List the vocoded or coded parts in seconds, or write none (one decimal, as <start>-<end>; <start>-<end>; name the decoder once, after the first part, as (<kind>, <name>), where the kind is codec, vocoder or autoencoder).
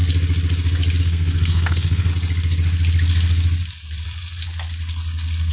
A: 1.0-2.1 (codec, SNAC)